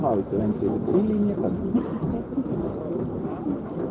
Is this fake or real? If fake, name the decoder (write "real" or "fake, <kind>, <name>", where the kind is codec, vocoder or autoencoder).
real